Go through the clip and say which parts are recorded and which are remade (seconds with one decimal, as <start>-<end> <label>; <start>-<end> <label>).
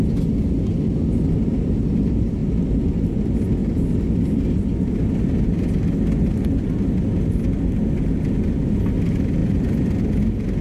0.0-10.6 recorded